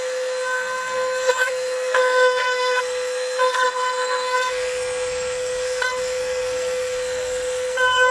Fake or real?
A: fake